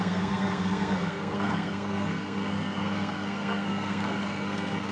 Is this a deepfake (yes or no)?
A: yes